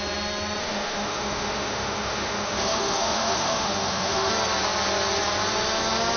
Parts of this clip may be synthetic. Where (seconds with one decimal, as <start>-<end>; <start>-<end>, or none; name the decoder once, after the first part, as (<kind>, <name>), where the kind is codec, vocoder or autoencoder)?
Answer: 0.6-4.3 (autoencoder, DAC-VAE)